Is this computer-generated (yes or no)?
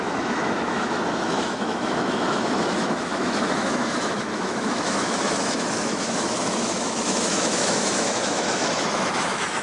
yes